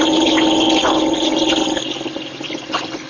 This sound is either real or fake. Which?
real